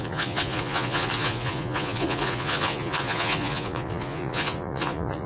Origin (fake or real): fake